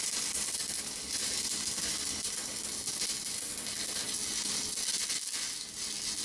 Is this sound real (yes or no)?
yes